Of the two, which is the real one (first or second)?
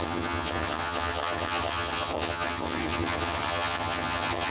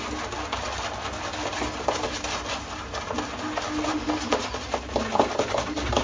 second